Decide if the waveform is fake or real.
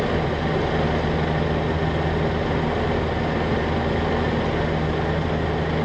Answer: real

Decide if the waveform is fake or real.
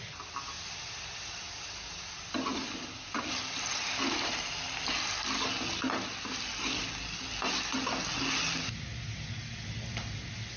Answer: real